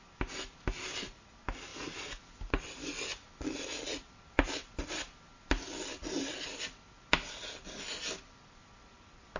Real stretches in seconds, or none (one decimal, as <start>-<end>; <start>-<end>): 0.0-9.4